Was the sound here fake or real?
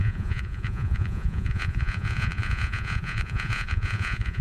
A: fake